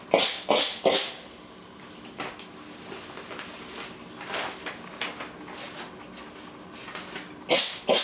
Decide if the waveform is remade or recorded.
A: recorded